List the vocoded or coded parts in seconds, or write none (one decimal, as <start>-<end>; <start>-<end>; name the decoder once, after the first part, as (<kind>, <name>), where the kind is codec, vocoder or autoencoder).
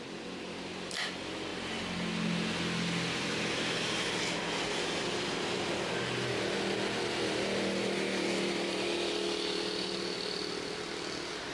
none